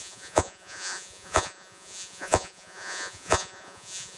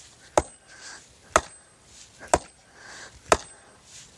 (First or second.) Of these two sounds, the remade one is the first